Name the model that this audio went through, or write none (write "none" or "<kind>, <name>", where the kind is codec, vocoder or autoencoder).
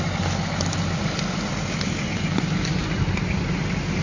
none